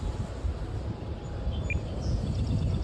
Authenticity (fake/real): real